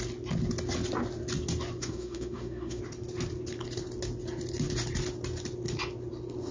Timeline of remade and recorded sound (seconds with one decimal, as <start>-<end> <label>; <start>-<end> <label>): 0.0-1.8 recorded; 1.8-2.8 remade; 2.8-6.5 recorded